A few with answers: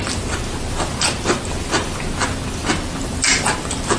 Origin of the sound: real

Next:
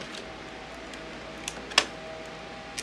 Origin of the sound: real